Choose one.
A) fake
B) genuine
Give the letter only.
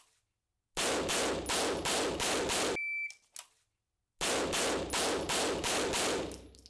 B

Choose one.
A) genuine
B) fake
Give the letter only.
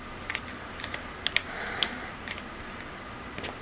A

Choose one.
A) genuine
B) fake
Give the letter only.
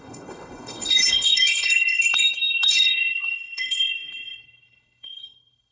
B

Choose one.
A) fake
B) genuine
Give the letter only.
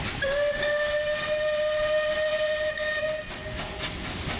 B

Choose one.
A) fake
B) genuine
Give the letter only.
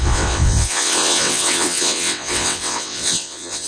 A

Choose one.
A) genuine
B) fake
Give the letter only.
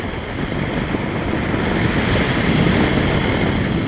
A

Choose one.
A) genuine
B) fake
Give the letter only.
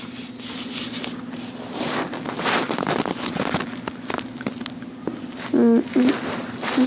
A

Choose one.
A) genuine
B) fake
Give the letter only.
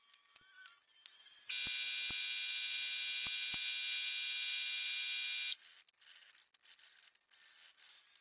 A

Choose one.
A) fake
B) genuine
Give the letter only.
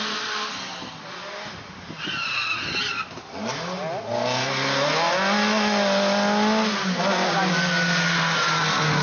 B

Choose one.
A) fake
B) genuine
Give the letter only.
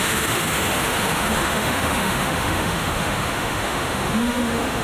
A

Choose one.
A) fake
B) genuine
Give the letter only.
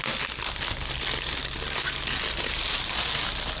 B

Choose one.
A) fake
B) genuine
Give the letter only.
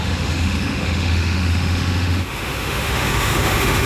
A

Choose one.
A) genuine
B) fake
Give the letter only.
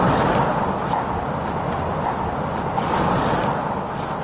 A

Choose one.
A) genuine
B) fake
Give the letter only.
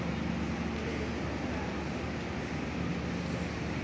A